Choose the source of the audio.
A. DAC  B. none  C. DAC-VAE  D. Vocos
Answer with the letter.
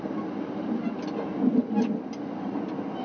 B